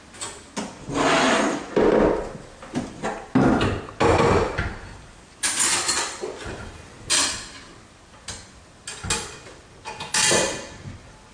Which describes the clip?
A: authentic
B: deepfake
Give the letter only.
A